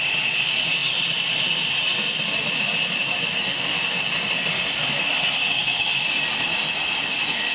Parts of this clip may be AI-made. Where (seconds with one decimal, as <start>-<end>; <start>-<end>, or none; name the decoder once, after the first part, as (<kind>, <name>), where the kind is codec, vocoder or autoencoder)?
none